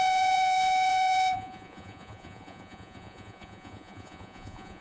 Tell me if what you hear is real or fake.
fake